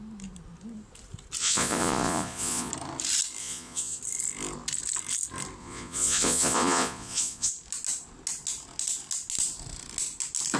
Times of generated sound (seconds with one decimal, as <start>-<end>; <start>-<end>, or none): 1.4-2.7; 3.4-4.0; 5.6-7.5